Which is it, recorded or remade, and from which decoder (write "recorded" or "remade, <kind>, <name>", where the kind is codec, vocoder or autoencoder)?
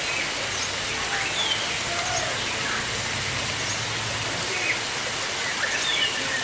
recorded